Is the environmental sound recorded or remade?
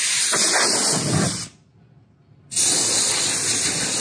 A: recorded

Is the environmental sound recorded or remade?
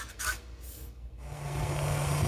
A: remade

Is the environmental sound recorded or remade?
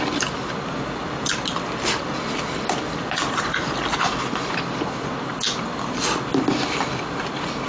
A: recorded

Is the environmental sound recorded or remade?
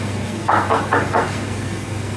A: remade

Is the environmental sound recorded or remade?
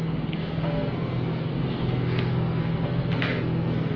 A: remade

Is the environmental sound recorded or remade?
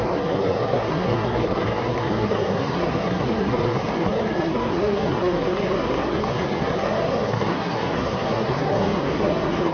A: remade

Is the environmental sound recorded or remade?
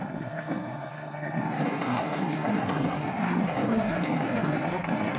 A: remade